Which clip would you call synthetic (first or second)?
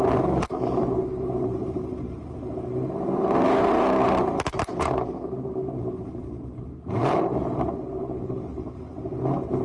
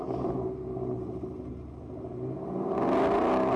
first